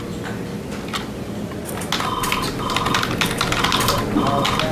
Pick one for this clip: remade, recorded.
recorded